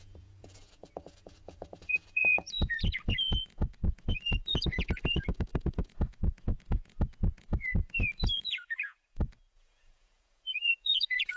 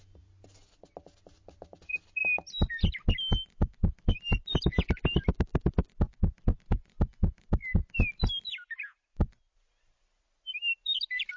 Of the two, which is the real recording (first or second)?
second